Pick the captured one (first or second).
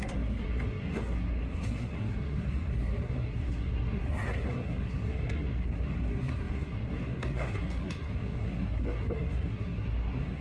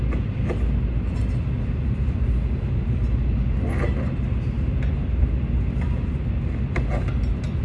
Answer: second